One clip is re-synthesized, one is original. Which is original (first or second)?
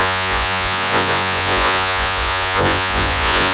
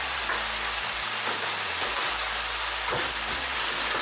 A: second